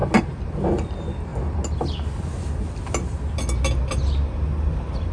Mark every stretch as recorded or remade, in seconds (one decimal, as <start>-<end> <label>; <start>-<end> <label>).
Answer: 0.0-5.1 recorded